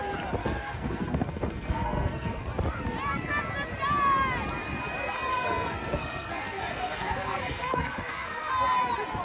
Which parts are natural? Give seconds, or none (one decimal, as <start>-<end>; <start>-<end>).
0.0-0.4; 2.4-5.3; 8.5-9.2